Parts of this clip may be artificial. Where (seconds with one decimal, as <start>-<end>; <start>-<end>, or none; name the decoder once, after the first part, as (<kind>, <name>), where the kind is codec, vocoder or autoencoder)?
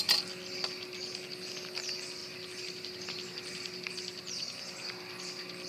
none